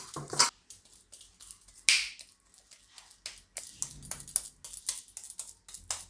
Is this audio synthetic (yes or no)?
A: no